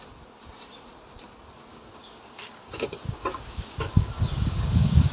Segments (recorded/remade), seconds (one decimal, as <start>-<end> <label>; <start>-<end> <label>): 0.0-1.7 recorded; 1.7-5.1 remade